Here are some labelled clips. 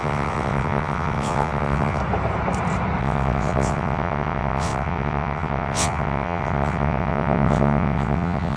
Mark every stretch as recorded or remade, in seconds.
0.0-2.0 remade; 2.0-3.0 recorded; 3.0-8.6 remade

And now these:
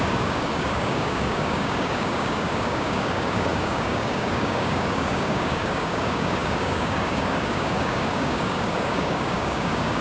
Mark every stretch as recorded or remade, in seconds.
0.0-10.0 remade

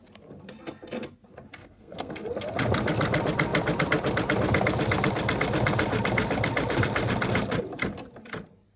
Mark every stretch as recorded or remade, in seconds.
0.0-1.6 recorded; 1.6-2.1 remade; 2.1-8.8 recorded

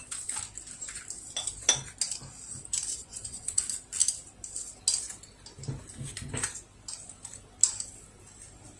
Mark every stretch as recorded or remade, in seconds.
0.0-3.0 recorded; 3.0-3.6 remade; 3.6-8.8 recorded

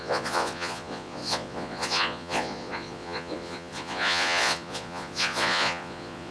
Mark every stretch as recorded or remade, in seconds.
0.0-6.3 remade

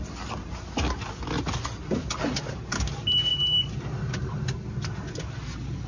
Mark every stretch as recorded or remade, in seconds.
0.0-5.9 recorded

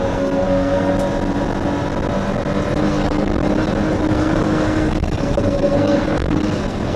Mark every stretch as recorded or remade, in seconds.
0.0-0.9 remade; 0.9-2.9 recorded; 2.9-3.3 remade; 3.3-4.0 recorded; 4.0-7.0 remade

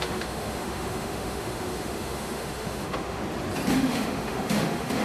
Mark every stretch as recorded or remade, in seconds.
0.0-3.2 remade; 3.2-3.7 recorded; 3.7-5.0 remade